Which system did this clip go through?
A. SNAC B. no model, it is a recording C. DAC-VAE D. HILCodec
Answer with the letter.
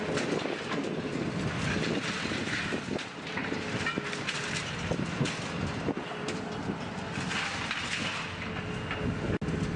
B